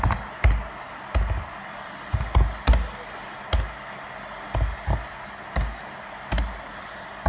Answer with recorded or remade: recorded